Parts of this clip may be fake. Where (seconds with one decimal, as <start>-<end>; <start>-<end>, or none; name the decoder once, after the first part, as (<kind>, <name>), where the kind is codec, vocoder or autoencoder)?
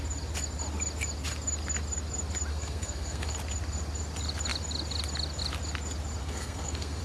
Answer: 2.5-3.3 (codec, SNAC); 6.2-7.0